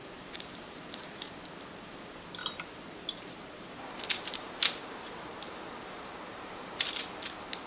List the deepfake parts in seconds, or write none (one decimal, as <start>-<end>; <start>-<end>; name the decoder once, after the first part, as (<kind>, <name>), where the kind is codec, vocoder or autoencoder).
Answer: 0.0-1.6 (vocoder, BigVGAN v2); 2.4-7.0